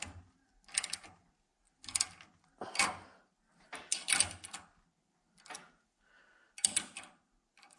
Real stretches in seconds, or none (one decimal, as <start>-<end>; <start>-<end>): 0.0-7.8